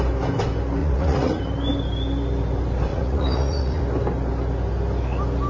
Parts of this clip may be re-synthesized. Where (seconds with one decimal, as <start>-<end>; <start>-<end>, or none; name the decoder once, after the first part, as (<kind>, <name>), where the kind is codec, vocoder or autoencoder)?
0.8-1.4 (vocoder, Vocos); 2.9-3.8